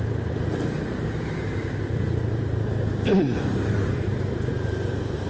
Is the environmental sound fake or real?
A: real